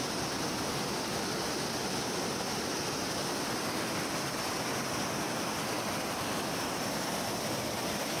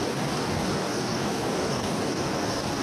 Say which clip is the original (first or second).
first